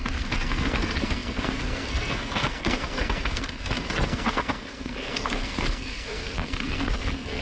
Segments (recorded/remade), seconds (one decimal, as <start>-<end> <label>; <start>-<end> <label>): 0.0-7.4 remade